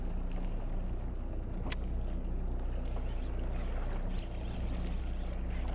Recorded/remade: recorded